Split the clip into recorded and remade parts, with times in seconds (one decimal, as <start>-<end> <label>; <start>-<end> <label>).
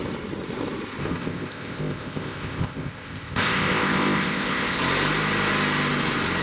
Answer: 0.0-1.0 recorded; 1.0-4.8 remade; 4.8-6.4 recorded